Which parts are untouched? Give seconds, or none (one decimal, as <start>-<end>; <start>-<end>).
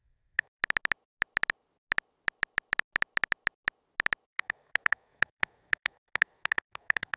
0.6-4.3